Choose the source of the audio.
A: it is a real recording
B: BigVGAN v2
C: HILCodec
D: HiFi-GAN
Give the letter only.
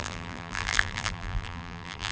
B